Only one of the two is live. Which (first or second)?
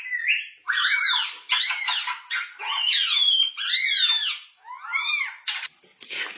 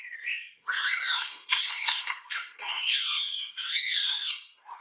first